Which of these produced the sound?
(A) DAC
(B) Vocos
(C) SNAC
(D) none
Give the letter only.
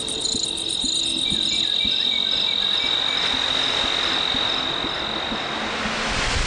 D